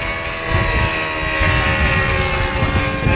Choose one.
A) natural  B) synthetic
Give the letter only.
A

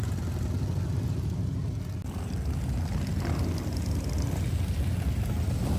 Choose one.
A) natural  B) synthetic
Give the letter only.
A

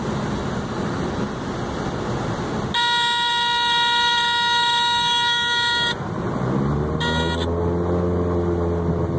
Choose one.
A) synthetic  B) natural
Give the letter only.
B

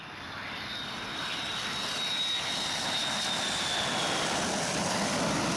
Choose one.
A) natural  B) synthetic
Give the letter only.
A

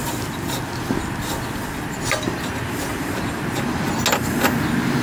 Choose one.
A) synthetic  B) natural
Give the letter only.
B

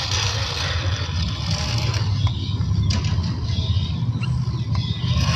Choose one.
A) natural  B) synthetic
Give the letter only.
A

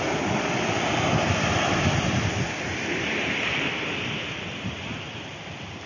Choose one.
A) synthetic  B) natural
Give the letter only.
A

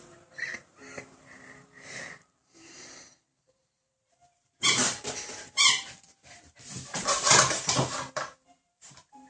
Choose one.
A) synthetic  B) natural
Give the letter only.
A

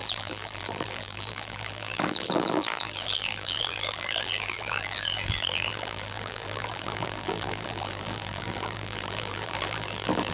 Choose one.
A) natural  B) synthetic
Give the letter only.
B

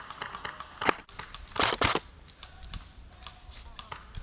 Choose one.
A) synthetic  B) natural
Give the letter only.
B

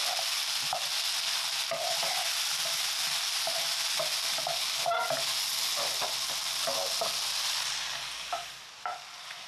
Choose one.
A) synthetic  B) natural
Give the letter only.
B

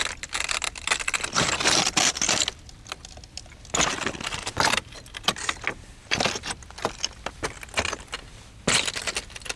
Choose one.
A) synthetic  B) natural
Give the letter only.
B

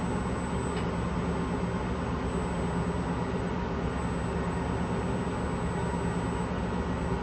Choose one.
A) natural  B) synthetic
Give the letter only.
A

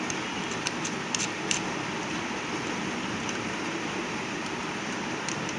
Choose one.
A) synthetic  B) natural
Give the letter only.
B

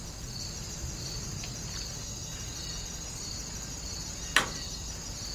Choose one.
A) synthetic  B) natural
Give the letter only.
B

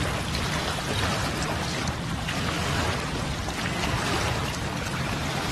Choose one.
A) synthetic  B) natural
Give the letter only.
B